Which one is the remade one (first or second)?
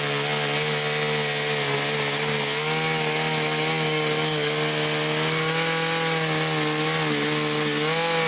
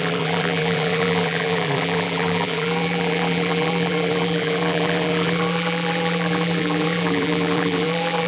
second